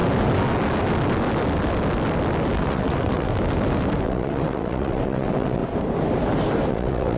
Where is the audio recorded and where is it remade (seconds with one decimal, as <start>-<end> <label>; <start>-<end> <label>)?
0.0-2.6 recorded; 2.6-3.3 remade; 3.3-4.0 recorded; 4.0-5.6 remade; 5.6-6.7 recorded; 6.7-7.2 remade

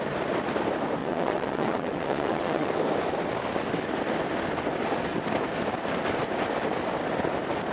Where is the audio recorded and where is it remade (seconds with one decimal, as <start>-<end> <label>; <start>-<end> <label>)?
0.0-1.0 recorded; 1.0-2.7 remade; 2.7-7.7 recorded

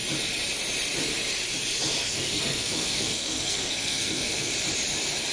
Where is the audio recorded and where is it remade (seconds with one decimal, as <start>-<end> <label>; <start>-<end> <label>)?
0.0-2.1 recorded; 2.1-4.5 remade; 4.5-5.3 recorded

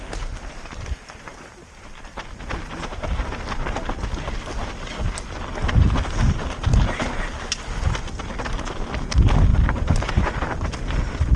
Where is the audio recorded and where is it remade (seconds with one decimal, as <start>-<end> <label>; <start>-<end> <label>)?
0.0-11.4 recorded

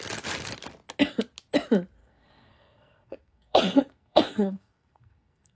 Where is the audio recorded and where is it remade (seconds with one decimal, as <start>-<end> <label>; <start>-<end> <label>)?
0.0-2.0 recorded; 2.0-5.6 remade